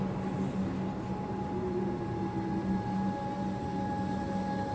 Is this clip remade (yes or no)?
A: no